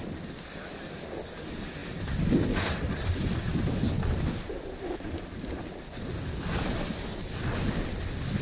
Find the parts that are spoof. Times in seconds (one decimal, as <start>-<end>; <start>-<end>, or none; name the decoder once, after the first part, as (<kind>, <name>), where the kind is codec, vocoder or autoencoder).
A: none